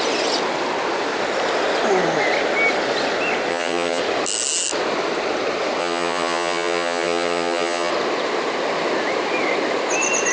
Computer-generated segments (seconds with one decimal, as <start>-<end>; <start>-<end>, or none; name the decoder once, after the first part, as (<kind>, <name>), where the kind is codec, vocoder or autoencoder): 3.5-4.0 (vocoder, HiFi-GAN); 5.8-7.9